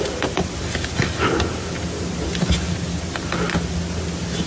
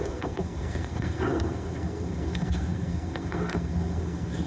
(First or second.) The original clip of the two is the first